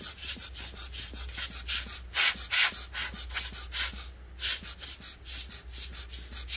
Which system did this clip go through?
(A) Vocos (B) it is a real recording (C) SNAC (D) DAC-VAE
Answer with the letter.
B